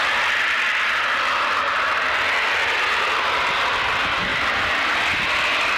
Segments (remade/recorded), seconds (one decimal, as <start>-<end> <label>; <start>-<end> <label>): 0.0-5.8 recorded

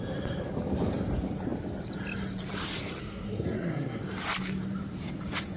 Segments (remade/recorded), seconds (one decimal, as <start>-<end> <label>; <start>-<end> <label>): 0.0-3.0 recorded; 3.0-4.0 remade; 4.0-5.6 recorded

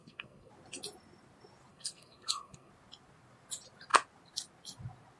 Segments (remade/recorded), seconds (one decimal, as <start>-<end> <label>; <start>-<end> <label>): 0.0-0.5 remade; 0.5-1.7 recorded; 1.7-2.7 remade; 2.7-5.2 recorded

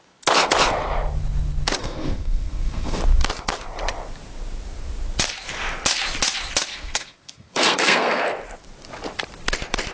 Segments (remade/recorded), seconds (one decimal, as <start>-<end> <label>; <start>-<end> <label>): 0.0-1.8 recorded; 1.8-3.0 remade; 3.0-6.7 recorded; 6.7-8.2 remade; 8.2-9.9 recorded